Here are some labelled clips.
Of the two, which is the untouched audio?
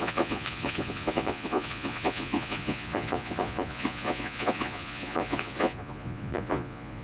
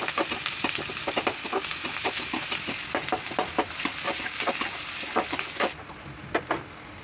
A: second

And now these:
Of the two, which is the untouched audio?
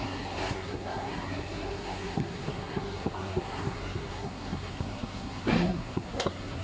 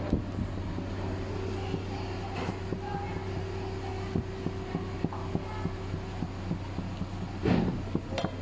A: second